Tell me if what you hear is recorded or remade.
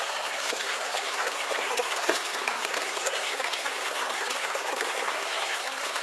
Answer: remade